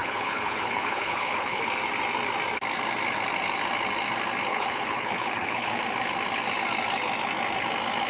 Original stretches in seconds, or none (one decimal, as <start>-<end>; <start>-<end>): 1.6-4.5; 5.8-8.1